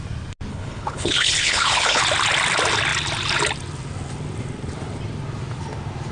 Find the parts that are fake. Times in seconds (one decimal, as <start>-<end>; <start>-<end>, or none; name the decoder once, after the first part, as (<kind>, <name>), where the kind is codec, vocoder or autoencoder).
0.5-2.0 (codec, HILCodec)